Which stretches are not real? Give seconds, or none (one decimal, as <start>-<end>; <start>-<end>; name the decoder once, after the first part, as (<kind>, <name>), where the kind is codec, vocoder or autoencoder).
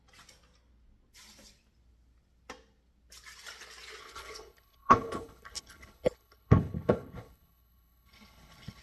4.0-8.8 (codec, HILCodec)